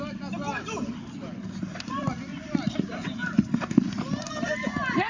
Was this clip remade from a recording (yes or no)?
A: no